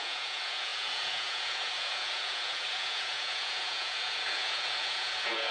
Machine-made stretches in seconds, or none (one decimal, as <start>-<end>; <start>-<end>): 0.0-5.5